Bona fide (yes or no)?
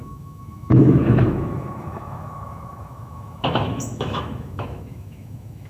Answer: no